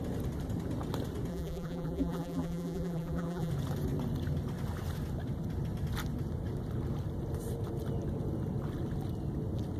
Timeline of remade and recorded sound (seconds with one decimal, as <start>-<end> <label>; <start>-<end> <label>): 0.0-1.3 recorded; 1.3-3.5 remade; 3.5-9.8 recorded